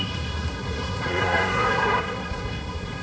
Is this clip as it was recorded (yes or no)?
no